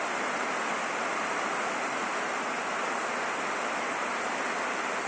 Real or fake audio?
real